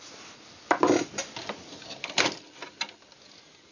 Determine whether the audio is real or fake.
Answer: real